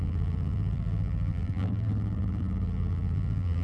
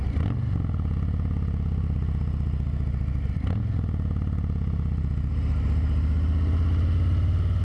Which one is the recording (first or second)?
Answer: second